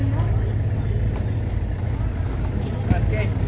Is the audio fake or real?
real